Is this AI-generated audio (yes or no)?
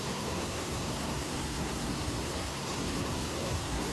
yes